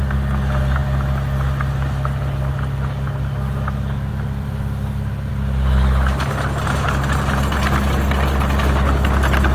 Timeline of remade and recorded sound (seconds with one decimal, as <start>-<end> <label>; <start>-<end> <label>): 0.0-4.1 recorded; 4.1-5.3 remade; 5.3-9.5 recorded